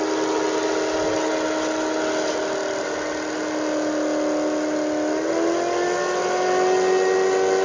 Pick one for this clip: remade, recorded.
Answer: recorded